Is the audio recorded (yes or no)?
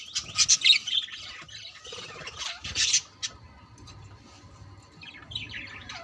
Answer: yes